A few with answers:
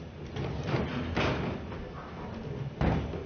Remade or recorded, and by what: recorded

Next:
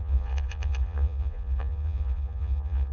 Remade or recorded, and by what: remade, vocoder, Vocos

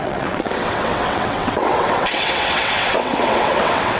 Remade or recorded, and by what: remade, vocoder, WaveNeXt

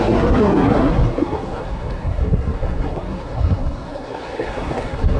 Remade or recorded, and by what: remade, codec, SNAC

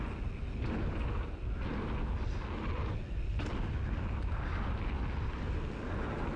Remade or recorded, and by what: recorded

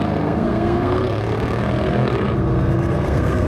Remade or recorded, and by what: remade, codec, SNAC